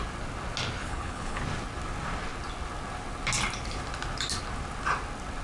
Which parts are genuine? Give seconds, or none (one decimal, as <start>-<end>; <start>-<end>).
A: 0.0-0.8; 1.4-5.4